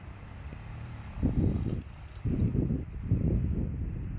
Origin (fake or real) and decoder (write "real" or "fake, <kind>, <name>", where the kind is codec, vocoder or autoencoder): real